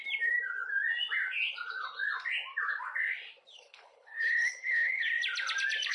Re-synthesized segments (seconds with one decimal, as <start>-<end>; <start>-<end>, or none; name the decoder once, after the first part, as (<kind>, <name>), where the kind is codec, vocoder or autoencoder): 3.5-5.1 (codec, HILCodec)